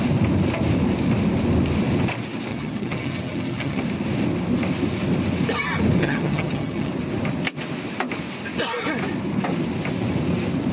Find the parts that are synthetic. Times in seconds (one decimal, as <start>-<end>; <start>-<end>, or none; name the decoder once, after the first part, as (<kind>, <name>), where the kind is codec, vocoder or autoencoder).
2.5-3.8 (vocoder, HiFi-GAN); 6.0-6.9

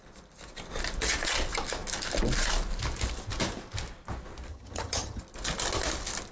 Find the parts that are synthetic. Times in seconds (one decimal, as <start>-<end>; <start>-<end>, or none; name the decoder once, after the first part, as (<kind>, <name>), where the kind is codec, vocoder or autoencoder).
4.5-5.2 (vocoder, HiFi-GAN)

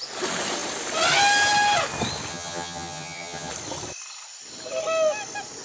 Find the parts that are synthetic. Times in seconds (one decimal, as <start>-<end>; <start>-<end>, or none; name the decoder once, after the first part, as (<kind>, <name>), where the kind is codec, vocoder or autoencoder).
2.3-3.5 (vocoder, HiFi-GAN)

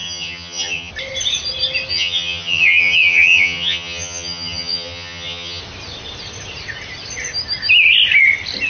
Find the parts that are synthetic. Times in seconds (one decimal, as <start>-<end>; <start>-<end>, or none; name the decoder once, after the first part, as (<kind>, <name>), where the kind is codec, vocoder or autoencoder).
0.0-0.9 (vocoder, HiFi-GAN); 1.9-5.6

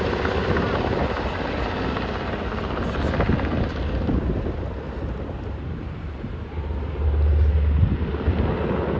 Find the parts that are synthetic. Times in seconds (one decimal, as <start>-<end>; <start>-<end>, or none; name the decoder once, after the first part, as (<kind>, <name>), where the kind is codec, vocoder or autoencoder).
none

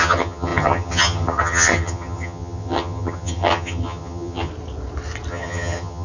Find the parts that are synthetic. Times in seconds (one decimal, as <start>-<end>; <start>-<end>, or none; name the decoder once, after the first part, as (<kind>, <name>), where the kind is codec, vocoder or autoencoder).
0.0-4.5 (vocoder, HiFi-GAN); 5.3-6.0

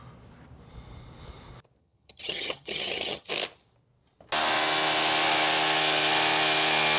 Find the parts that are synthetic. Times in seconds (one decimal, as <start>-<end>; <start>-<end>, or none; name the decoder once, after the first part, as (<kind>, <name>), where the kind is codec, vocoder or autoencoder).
1.8-3.3 (vocoder, HiFi-GAN)